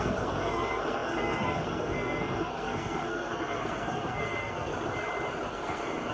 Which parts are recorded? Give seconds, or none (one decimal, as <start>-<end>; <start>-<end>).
4.7-5.5